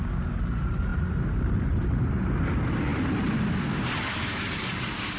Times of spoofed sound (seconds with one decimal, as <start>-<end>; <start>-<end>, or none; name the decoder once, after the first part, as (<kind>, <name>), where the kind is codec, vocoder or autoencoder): none